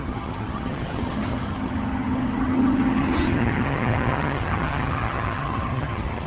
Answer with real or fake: fake